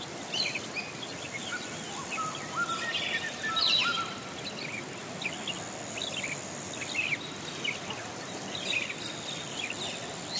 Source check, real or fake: real